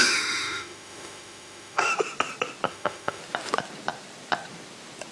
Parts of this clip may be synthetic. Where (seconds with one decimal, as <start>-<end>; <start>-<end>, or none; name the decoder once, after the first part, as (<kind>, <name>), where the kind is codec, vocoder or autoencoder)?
0.0-1.9 (autoencoder, DAC-VAE); 2.7-3.2